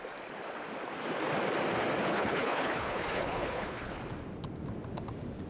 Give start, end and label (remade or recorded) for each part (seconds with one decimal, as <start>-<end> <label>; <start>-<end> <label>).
0.0-2.1 recorded; 2.1-4.0 remade; 4.0-5.5 recorded